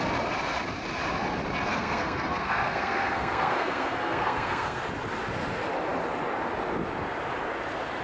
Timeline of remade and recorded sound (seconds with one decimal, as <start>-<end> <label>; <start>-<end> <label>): 0.0-1.7 recorded; 1.7-4.8 remade; 4.8-8.0 recorded